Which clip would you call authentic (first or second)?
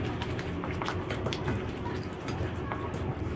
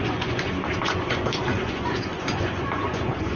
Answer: first